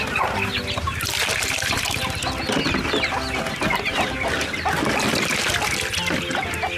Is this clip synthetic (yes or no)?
no